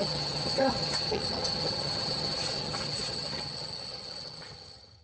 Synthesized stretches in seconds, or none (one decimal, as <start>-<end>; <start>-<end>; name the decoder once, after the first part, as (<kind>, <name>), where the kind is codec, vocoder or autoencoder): 0.0-5.0 (vocoder, HiFi-GAN)